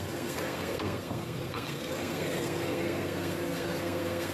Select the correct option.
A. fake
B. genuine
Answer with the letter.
A